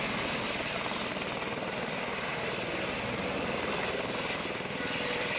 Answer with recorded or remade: recorded